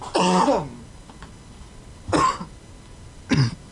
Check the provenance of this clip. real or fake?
real